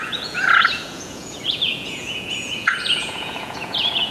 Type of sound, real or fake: fake